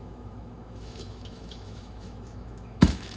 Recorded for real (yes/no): no